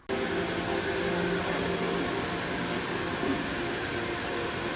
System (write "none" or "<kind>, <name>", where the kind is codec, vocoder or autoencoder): none